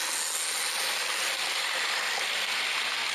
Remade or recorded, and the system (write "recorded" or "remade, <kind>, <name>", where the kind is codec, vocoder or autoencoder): recorded